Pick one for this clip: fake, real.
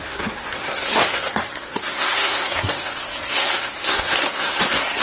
fake